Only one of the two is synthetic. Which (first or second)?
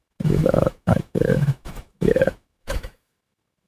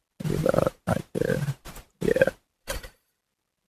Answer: first